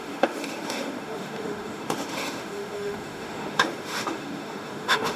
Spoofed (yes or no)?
yes